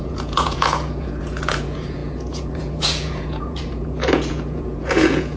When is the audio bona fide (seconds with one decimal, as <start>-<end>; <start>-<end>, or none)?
none